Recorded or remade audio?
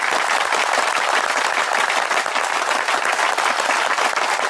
recorded